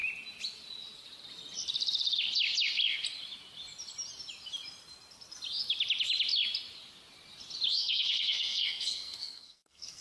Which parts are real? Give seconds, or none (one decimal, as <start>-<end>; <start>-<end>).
0.0-7.7